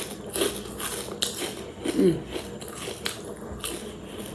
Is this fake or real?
real